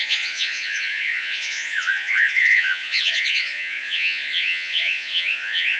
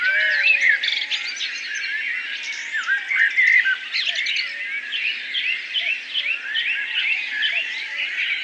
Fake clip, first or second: first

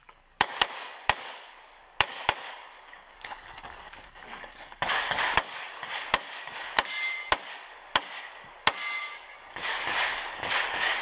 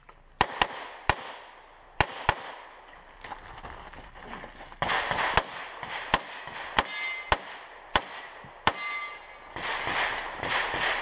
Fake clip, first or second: first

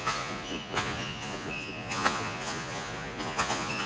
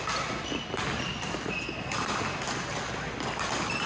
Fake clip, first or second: first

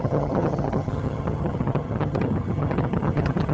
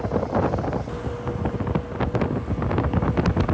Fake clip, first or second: first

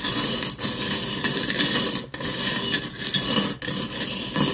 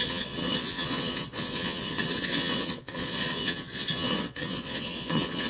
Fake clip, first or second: second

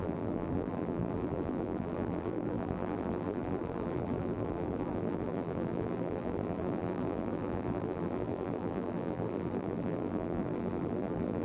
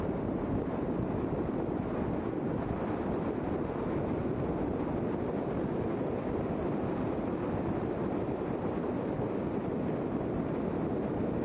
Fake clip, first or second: first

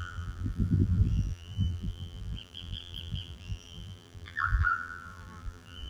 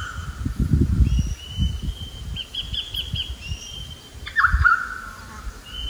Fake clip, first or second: first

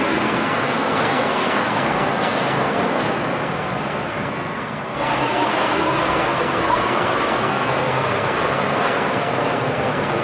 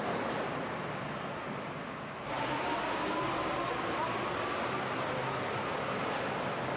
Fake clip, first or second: first